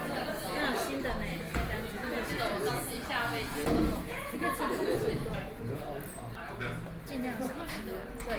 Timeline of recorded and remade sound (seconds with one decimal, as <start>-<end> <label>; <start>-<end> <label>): 0.0-1.5 recorded; 1.5-5.8 remade; 5.8-8.4 recorded